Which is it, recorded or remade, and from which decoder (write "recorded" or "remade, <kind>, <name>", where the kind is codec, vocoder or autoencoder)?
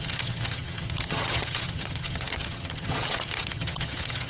remade, vocoder, HiFi-GAN